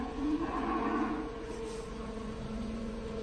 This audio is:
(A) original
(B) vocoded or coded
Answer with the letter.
B